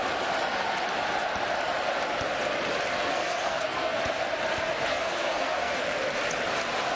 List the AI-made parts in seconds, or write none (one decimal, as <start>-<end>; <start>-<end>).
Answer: 3.1-4.0; 4.9-5.8